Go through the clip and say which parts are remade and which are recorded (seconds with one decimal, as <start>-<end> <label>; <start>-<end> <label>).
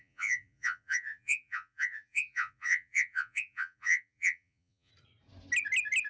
0.0-4.9 remade; 4.9-6.1 recorded